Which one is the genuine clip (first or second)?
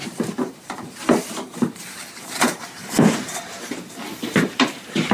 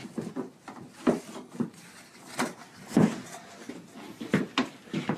second